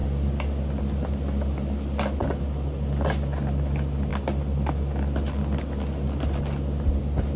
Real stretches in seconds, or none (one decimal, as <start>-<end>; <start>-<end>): 0.0-7.4